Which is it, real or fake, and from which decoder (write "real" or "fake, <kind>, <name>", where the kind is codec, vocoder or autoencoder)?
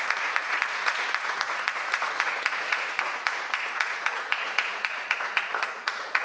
fake, vocoder, Vocos